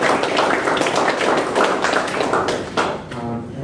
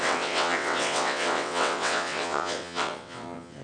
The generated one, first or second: second